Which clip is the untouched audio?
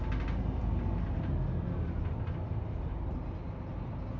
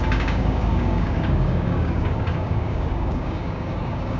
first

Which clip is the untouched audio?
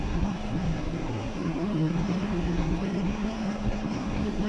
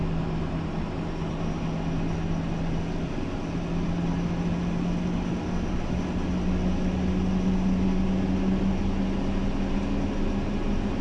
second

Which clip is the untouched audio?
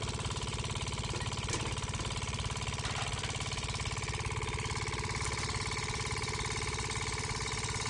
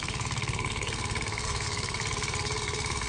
first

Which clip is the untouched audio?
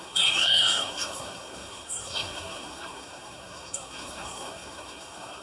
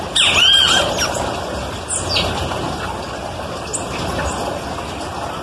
second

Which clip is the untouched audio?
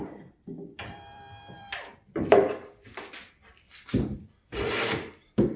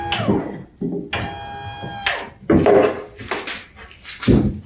second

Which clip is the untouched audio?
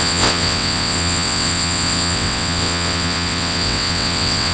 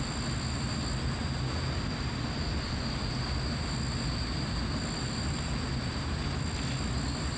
second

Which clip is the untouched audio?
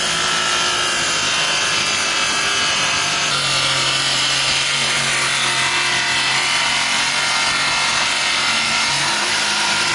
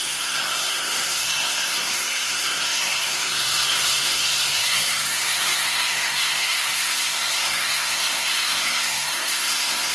first